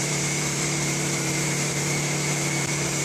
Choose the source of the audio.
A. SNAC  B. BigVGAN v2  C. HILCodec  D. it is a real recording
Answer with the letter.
B